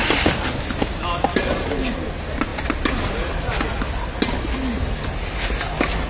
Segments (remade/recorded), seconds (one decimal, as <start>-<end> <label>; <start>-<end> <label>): 0.0-6.1 recorded